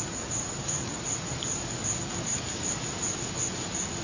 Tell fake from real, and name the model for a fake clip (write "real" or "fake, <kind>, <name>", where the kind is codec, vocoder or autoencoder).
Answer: real